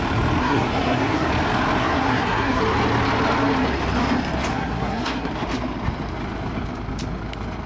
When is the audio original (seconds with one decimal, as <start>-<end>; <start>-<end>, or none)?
0.0-0.4; 1.3-1.8; 2.6-4.5; 5.3-7.7